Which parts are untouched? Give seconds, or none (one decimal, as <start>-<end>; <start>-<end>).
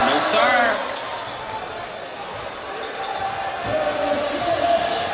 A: 0.0-2.1; 3.0-3.9